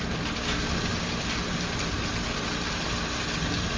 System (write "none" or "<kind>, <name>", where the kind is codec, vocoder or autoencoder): none